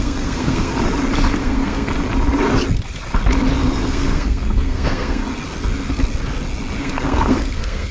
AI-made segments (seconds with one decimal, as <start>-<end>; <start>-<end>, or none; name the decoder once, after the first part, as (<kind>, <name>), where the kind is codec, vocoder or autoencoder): 0.0-0.7 (codec, SNAC); 1.4-1.9; 3.6-5.2; 6.8-7.9